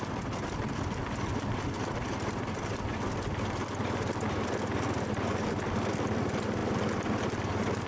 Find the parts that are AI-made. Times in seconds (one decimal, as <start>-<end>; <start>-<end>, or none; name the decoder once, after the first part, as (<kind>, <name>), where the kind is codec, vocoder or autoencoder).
none

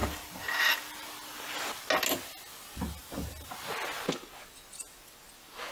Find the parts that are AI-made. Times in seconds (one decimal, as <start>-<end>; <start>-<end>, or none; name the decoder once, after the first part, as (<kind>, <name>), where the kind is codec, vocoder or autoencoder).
0.0-1.8 (vocoder, BigVGAN v2)